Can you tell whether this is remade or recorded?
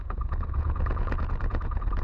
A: remade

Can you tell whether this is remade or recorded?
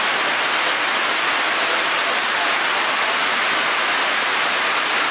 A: recorded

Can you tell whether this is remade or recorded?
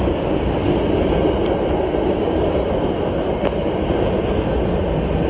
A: recorded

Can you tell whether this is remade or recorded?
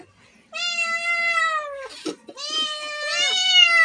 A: recorded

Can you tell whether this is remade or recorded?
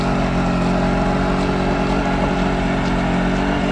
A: recorded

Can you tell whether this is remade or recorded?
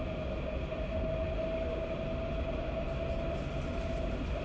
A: recorded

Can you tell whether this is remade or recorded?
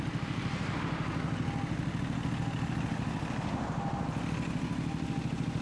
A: recorded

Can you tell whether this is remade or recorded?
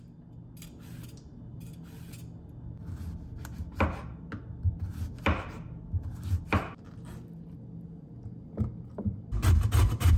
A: recorded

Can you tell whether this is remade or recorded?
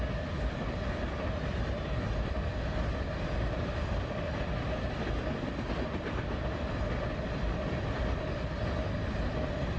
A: recorded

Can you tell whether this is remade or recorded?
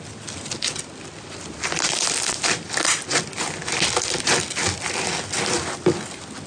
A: recorded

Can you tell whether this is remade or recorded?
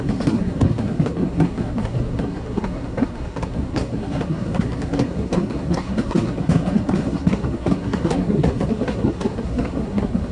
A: remade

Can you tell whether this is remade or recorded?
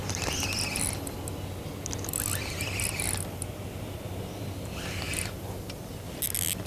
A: recorded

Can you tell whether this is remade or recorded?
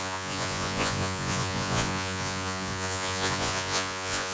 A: remade